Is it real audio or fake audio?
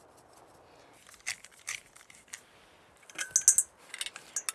real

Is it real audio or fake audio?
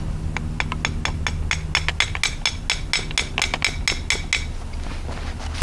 real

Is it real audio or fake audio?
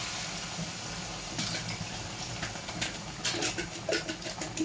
real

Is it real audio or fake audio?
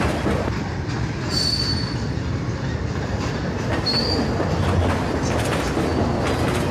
real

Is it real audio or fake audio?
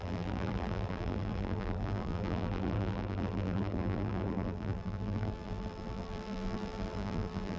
fake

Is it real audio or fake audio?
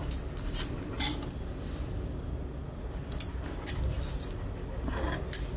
real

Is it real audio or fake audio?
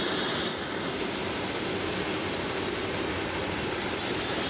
real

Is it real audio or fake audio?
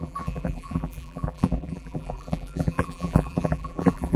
fake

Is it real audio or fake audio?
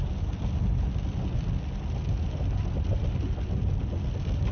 real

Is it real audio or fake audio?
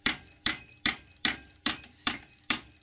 fake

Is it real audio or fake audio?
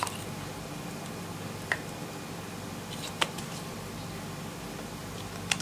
real